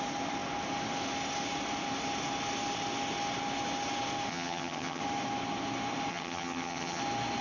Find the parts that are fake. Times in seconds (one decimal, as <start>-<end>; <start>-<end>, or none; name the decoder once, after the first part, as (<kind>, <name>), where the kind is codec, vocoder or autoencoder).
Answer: 4.3-5.0 (vocoder, HiFi-GAN); 6.1-7.0